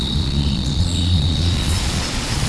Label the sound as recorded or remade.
remade